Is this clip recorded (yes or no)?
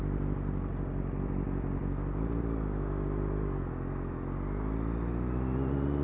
yes